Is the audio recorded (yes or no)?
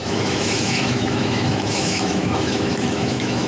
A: no